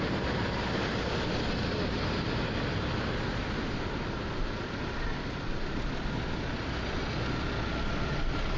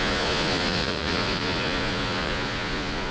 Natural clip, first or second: first